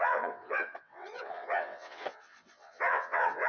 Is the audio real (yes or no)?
no